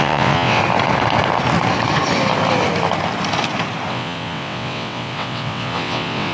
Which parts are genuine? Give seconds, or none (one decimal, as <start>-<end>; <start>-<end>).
0.6-3.9